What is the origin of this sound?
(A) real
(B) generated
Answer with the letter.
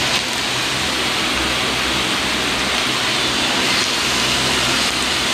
A